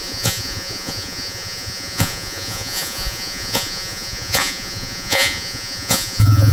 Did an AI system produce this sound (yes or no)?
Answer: yes